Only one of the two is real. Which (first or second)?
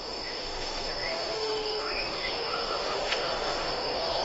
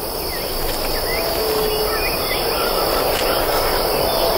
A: second